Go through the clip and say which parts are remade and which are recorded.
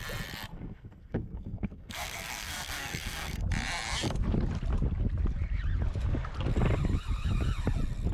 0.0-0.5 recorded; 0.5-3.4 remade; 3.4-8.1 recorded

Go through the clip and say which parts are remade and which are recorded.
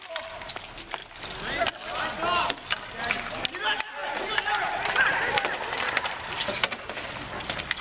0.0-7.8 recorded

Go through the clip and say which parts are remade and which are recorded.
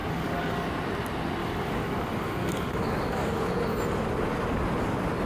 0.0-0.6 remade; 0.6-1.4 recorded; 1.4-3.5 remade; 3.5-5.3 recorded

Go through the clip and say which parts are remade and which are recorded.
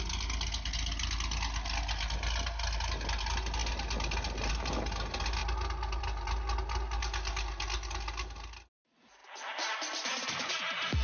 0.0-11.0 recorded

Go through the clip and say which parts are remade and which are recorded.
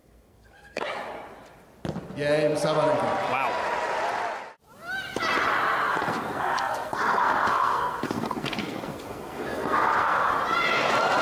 0.0-0.8 remade; 0.8-5.9 recorded; 5.9-10.3 remade; 10.3-11.2 recorded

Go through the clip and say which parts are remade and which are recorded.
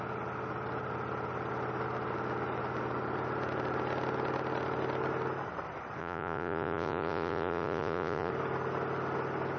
0.0-6.0 recorded; 6.0-8.3 remade; 8.3-9.6 recorded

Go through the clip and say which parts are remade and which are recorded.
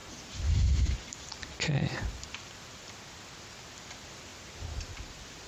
0.0-2.3 remade; 2.3-5.5 recorded